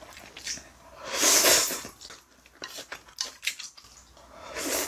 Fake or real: real